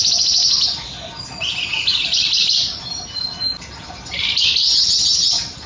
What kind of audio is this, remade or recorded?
recorded